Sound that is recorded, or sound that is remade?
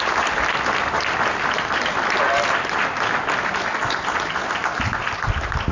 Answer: recorded